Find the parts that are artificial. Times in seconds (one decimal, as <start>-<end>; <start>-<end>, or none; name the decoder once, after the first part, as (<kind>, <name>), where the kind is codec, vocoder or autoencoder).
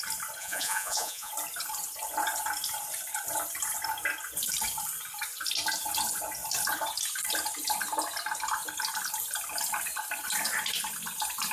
0.4-1.3 (vocoder, Vocos)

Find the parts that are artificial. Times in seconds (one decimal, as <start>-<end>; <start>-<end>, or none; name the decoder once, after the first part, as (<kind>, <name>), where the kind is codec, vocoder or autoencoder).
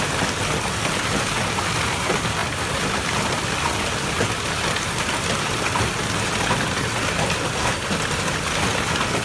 none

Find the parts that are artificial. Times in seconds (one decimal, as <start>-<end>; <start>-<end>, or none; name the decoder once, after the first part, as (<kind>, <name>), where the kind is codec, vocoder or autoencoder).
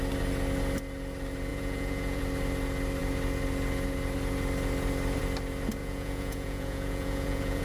1.5-2.2 (vocoder, Vocos); 5.8-7.6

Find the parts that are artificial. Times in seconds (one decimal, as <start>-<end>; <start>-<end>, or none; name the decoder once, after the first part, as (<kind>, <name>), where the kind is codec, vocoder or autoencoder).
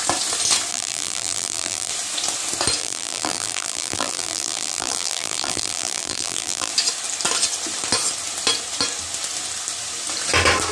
0.7-1.9 (vocoder, BigVGAN v2); 2.8-6.7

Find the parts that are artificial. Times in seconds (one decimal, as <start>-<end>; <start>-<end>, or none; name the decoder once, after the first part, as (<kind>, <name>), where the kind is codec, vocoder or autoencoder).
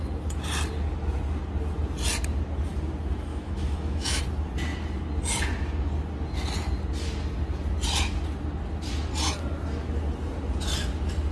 3.3-4.2 (autoencoder, DAC-VAE)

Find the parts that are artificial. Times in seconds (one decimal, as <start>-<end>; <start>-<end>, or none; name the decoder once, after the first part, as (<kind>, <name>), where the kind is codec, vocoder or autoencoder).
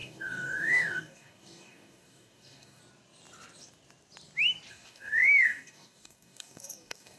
0.0-2.8 (codec, DAC); 4.7-7.2